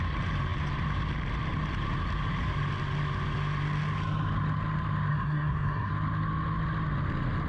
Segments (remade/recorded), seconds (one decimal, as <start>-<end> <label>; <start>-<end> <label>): 0.0-5.1 recorded; 5.1-5.9 remade; 5.9-7.5 recorded